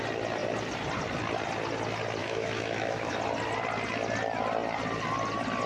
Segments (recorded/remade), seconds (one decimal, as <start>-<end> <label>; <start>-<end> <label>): 0.0-2.2 recorded; 2.2-3.1 remade; 3.1-5.7 recorded